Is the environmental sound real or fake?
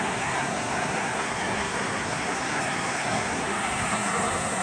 fake